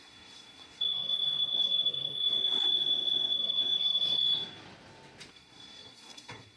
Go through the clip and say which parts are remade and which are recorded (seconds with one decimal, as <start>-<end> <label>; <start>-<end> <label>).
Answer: 0.0-4.2 remade; 4.2-5.3 recorded; 5.3-6.6 remade